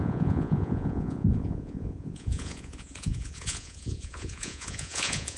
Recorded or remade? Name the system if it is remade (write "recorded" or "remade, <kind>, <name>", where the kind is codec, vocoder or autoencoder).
remade, vocoder, Vocos